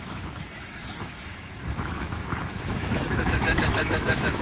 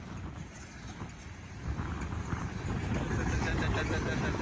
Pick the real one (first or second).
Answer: second